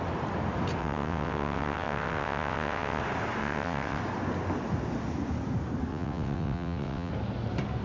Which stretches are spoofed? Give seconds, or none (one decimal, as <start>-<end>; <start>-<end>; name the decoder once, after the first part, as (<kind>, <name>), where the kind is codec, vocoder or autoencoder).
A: 0.8-3.0 (vocoder, WaveNeXt); 3.4-4.0; 5.9-7.1